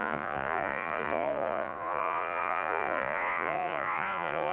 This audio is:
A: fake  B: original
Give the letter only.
A